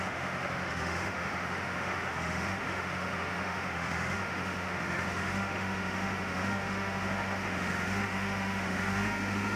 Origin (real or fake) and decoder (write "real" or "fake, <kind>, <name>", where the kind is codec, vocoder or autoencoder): fake, autoencoder, DAC-VAE